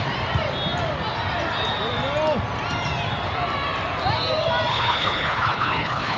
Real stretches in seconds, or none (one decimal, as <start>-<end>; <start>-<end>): 0.0-4.7